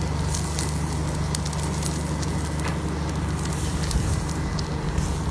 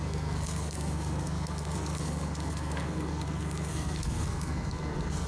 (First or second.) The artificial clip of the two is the second